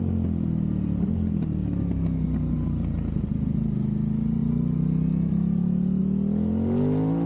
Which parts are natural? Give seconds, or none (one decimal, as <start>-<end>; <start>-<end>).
0.0-7.3

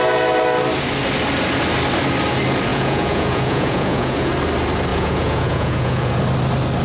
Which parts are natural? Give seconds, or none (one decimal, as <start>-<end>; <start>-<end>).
0.0-2.7; 4.3-4.9; 6.2-6.8

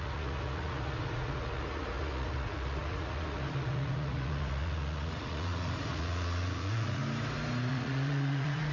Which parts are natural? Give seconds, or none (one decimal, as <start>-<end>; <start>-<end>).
7.0-7.7

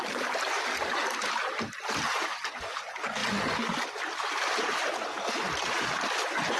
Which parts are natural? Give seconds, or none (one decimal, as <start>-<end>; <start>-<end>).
0.0-6.6

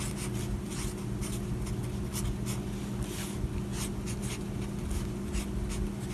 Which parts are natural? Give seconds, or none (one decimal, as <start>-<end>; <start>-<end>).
0.0-6.1

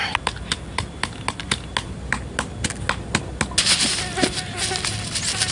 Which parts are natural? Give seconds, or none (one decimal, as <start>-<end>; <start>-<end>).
0.0-5.5

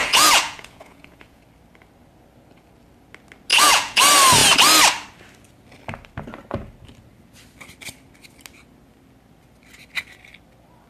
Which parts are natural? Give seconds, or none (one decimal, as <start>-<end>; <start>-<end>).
1.4-3.5; 4.0-10.9

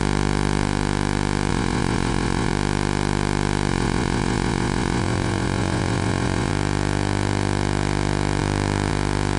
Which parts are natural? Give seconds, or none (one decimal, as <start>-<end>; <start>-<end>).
0.0-1.5; 2.5-3.7; 6.5-9.4